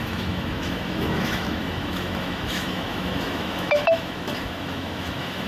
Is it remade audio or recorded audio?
remade